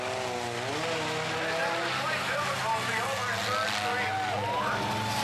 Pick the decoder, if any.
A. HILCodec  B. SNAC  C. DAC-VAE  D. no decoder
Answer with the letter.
D